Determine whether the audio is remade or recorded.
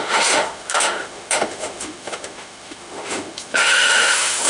remade